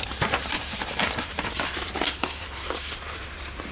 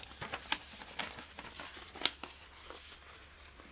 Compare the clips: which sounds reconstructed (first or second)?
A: first